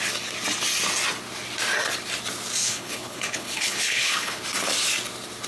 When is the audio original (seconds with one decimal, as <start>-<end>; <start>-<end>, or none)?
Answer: 0.0-2.6; 4.4-5.5